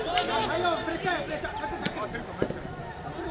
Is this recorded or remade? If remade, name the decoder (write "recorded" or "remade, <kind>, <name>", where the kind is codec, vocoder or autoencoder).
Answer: recorded